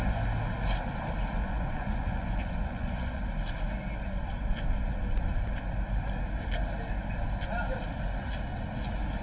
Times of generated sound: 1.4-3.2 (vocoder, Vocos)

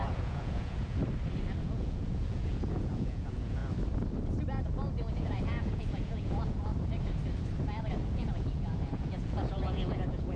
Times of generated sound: 0.0-1.0 (vocoder, Vocos); 1.6-3.6; 5.1-6.7; 7.9-10.4

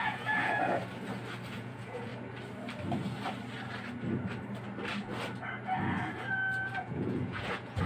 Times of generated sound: 0.0-0.8 (vocoder, Vocos); 1.5-2.1; 6.8-7.9

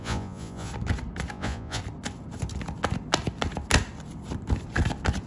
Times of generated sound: 0.0-0.7 (vocoder, Vocos); 1.3-1.8

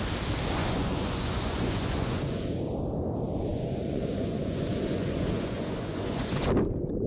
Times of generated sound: 0.6-2.6 (vocoder, Vocos); 3.5-6.5

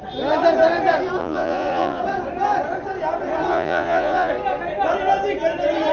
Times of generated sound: 1.2-2.0 (vocoder, Vocos); 3.5-4.3

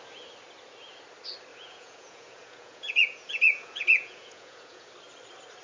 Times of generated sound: 1.5-4.9 (vocoder, Vocos)